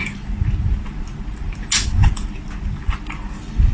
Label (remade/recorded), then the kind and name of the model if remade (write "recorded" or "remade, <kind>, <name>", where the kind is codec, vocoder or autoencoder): recorded